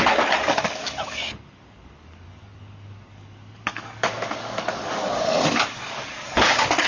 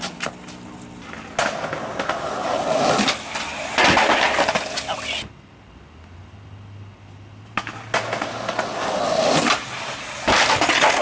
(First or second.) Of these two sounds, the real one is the second